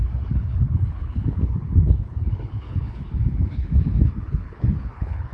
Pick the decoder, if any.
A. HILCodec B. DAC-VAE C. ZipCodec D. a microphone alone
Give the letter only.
A